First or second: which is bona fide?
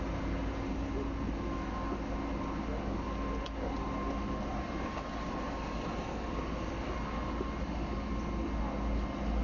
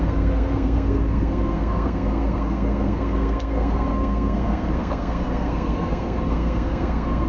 first